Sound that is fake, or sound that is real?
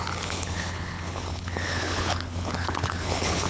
fake